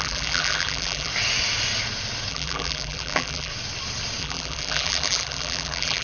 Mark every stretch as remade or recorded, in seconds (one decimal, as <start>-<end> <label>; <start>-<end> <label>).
0.0-1.1 remade; 1.1-2.3 recorded; 2.3-3.5 remade; 3.5-4.2 recorded; 4.2-6.0 remade